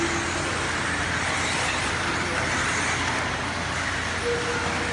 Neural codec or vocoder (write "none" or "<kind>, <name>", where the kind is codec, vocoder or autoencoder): none